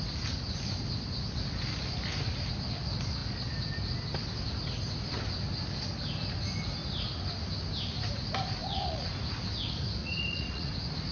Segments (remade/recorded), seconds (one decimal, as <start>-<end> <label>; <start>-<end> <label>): 0.0-8.6 recorded; 8.6-9.1 remade; 9.1-10.0 recorded; 10.0-10.7 remade; 10.7-11.1 recorded

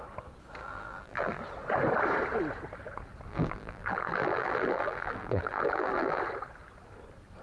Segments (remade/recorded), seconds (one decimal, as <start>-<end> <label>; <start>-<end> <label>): 0.0-0.6 recorded; 0.6-1.4 remade; 1.4-3.3 recorded; 3.3-6.2 remade; 6.2-7.4 recorded

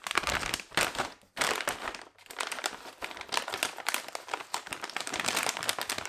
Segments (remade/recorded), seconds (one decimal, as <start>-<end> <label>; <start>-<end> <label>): 0.0-6.1 recorded

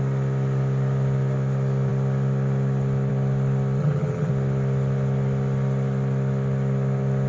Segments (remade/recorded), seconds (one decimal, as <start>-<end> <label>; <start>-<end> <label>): 0.0-3.8 recorded; 3.8-4.3 remade; 4.3-7.3 recorded

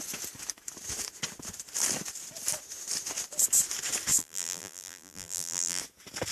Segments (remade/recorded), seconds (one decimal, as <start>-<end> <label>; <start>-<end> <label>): 0.0-4.2 recorded; 4.2-5.8 remade; 5.8-6.3 recorded

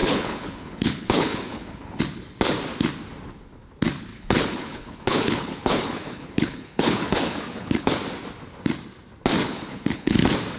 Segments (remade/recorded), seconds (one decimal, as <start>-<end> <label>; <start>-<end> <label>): 0.0-2.0 remade; 2.0-4.1 recorded; 4.1-7.9 remade; 7.9-9.4 recorded; 9.4-10.2 remade; 10.2-10.6 recorded

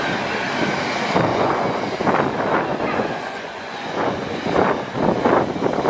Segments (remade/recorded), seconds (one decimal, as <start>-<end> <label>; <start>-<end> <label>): 0.0-1.3 recorded; 1.3-1.8 remade; 1.8-2.7 recorded; 2.7-4.4 remade; 4.4-5.9 recorded